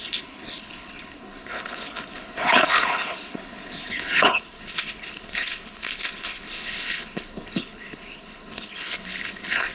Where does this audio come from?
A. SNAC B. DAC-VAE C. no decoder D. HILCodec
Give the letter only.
D